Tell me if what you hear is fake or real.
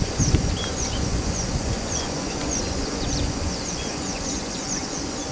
fake